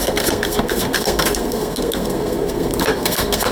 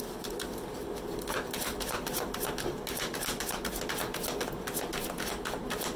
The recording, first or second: second